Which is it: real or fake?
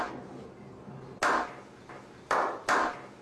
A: real